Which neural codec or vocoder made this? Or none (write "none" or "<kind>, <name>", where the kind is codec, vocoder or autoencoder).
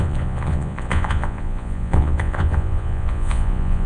vocoder, Vocos